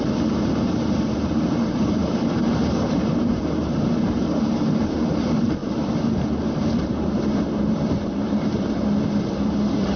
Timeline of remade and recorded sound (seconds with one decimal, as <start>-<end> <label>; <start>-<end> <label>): 0.0-5.6 remade; 5.6-6.5 recorded; 6.5-10.0 remade